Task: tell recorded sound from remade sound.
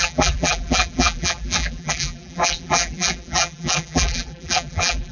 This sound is remade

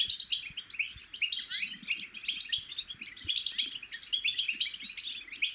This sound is recorded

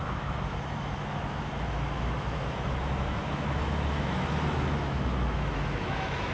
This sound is remade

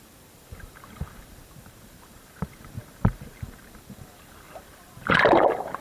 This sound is remade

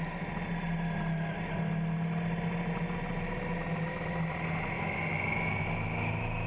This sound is recorded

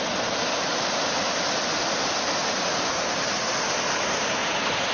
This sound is recorded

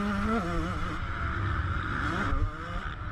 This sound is recorded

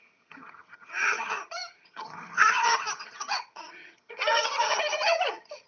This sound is remade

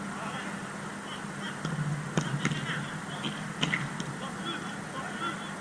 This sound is recorded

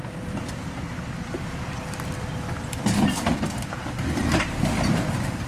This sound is remade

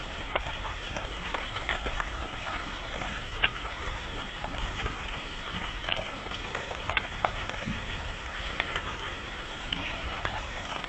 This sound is remade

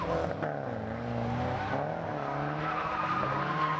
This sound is recorded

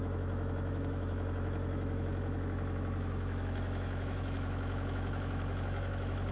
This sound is remade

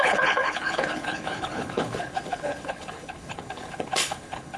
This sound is remade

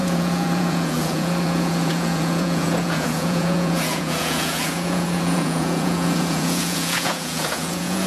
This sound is remade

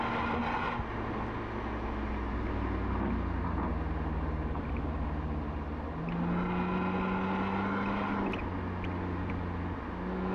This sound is recorded